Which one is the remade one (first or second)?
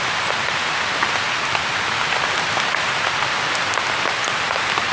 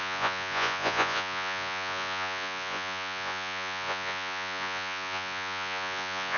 second